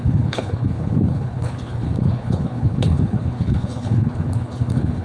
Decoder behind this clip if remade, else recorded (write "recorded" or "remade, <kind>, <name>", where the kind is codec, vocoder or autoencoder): remade, codec, HILCodec